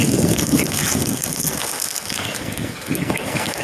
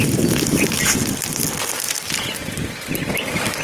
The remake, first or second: first